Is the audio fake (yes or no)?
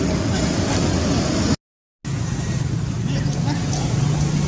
no